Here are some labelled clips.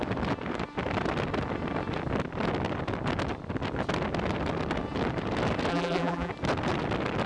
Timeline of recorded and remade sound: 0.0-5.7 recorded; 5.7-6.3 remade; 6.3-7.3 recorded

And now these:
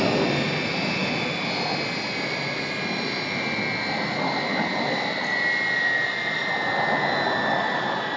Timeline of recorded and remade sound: 0.0-8.2 recorded

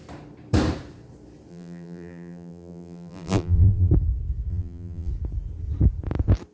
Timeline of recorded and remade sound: 0.0-1.5 recorded; 1.5-3.9 remade; 3.9-4.5 recorded; 4.5-5.1 remade; 5.1-6.5 recorded

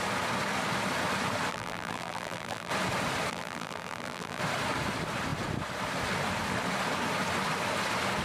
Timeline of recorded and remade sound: 0.0-1.5 recorded; 1.5-2.7 remade; 2.7-3.3 recorded; 3.3-4.4 remade; 4.4-8.2 recorded